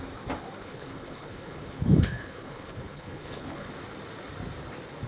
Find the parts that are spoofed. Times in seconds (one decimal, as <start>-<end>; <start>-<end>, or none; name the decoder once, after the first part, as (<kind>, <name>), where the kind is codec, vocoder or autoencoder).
0.6-3.7 (codec, HILCodec)